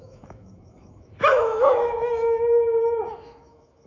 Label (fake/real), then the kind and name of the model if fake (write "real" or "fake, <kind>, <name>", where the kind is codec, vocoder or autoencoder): fake, autoencoder, DAC-VAE